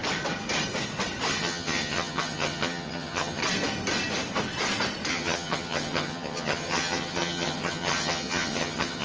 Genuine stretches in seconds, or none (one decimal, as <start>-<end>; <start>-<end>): 0.0-1.4; 3.4-5.1